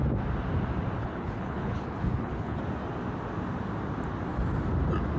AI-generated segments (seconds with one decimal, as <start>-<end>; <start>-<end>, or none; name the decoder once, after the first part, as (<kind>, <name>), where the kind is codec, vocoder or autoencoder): 1.0-2.6 (codec, HILCodec)

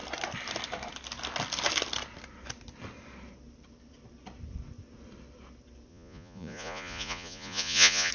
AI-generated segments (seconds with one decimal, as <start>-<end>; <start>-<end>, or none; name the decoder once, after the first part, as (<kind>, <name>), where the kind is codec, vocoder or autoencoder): 5.9-8.1 (vocoder, Vocos)

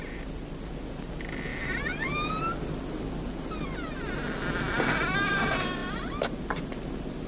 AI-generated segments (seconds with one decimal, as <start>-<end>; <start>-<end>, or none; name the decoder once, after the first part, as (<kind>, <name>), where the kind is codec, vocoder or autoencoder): none

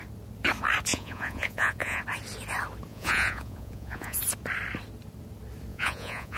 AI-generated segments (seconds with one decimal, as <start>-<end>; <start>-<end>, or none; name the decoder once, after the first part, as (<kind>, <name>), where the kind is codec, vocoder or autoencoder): 0.9-2.0 (vocoder, Vocos); 2.9-4.2; 5.7-6.4

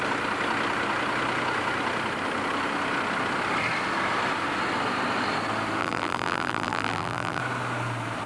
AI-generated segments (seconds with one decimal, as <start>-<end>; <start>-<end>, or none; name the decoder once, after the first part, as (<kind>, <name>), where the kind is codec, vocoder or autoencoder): 5.8-7.4 (vocoder, BigVGAN v2)

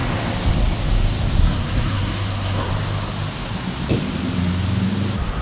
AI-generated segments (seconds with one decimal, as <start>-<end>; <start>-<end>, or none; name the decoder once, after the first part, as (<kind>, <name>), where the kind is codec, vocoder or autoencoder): 1.4-2.7 (codec, SNAC)

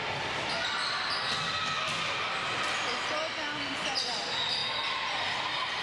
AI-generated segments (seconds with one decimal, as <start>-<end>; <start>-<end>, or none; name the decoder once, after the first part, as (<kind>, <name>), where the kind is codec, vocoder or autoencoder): none

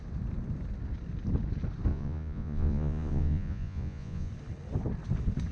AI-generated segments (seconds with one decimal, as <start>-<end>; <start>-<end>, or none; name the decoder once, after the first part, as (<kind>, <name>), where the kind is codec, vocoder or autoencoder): 1.9-4.3 (vocoder, Vocos)